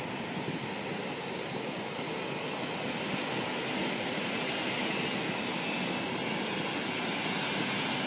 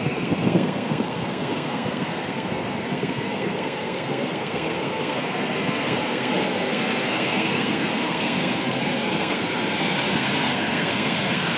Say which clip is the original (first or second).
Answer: first